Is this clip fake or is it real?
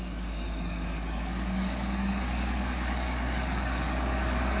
fake